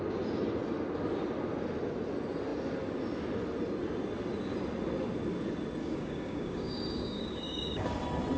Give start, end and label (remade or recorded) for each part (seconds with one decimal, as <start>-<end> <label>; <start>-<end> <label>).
0.0-5.8 recorded; 5.8-7.9 remade; 7.9-8.4 recorded